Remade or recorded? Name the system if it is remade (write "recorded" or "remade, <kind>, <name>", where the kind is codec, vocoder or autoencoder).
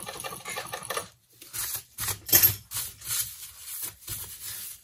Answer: recorded